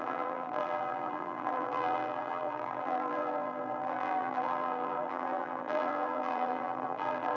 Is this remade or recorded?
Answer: remade